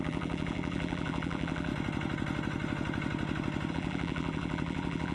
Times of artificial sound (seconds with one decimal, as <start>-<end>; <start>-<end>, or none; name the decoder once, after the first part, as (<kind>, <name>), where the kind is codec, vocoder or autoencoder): 0.0-1.7 (vocoder, BigVGAN v2); 3.7-5.1